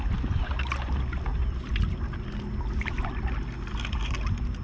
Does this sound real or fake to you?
real